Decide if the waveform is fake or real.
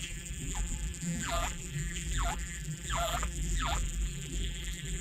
fake